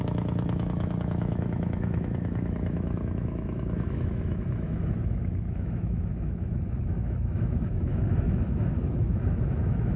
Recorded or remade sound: remade